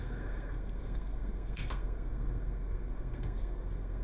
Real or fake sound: fake